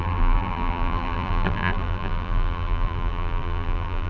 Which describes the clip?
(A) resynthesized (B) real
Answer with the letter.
A